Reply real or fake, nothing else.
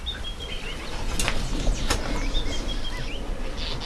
real